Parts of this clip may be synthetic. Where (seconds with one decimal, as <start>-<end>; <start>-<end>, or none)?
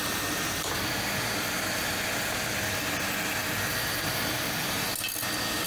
none